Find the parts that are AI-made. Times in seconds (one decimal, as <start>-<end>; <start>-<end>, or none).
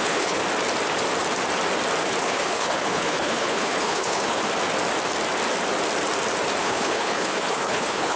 0.0-0.4; 2.2-4.4; 6.6-8.2